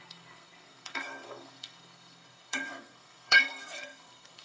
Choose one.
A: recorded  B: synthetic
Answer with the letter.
B